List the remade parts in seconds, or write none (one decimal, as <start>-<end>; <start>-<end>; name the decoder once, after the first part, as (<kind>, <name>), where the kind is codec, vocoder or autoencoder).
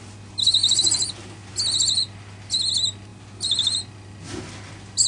none